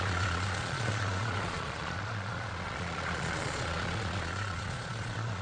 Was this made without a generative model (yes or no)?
no